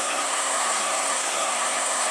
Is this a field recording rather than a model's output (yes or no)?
no